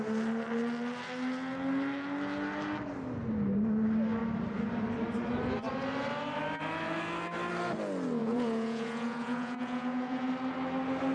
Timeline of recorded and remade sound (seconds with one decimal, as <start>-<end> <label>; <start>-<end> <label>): 0.0-8.2 recorded; 8.2-10.3 remade; 10.3-11.1 recorded